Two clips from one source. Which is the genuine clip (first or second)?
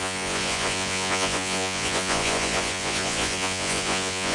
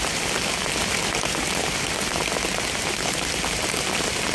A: second